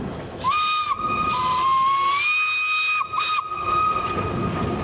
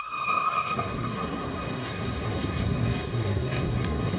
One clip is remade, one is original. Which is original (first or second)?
first